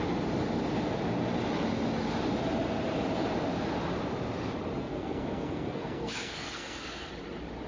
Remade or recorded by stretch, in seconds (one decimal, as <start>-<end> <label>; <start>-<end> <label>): 0.0-4.8 recorded; 4.8-7.1 remade; 7.1-7.7 recorded